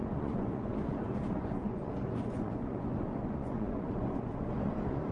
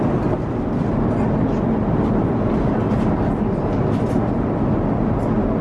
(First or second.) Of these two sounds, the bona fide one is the second